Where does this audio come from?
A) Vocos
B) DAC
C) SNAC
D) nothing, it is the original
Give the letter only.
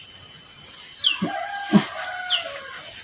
D